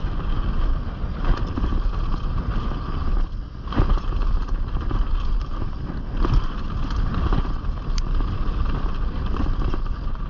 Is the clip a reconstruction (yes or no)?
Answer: no